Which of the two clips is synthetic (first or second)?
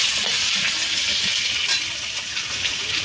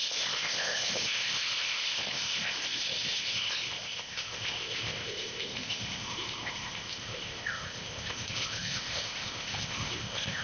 second